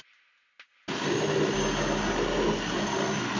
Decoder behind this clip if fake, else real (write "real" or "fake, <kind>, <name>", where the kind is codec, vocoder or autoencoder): real